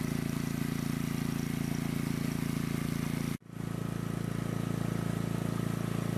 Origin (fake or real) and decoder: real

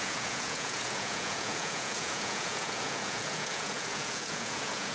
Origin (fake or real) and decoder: fake, vocoder, Vocos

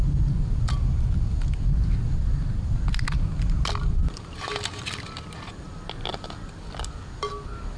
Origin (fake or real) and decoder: real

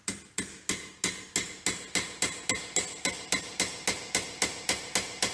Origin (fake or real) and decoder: real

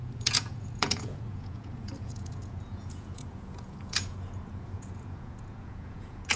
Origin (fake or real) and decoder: fake, vocoder, Vocos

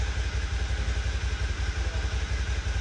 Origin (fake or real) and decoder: real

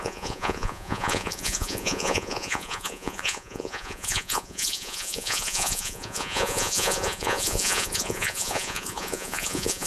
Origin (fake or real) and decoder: fake, vocoder, Vocos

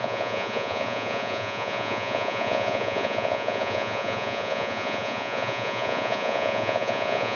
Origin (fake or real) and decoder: fake, vocoder, Vocos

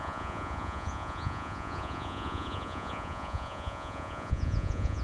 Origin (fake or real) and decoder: fake, vocoder, Vocos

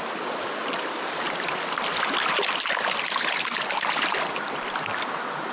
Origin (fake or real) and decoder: real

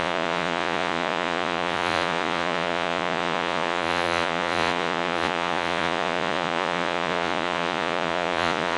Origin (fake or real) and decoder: fake, vocoder, Vocos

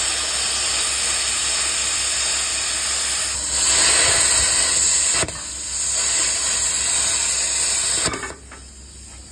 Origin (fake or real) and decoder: real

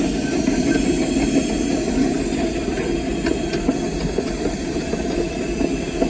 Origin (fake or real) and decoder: real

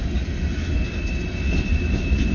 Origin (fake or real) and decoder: real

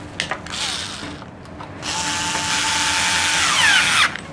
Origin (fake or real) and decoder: real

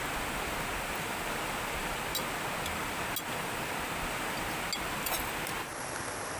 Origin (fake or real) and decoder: real